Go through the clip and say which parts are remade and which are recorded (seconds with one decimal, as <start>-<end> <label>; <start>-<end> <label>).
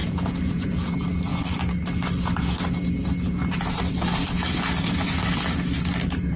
0.0-0.7 remade; 0.7-6.4 recorded